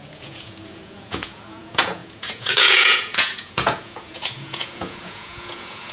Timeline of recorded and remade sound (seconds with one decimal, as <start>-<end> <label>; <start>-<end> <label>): 0.0-5.9 remade